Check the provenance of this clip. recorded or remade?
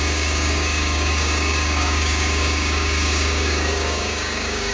remade